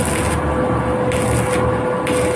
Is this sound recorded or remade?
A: recorded